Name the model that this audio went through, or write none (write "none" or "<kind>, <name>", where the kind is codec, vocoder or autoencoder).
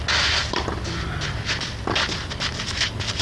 none